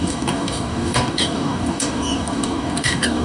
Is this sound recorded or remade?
remade